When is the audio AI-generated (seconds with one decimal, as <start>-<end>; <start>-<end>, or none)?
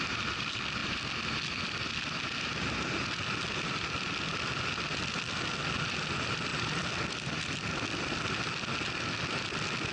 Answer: none